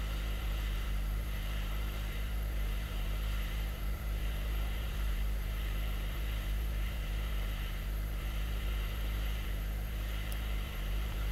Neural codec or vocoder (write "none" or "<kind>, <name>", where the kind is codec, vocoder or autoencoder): vocoder, BigVGAN v2